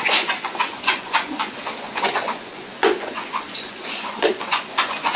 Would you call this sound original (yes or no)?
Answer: no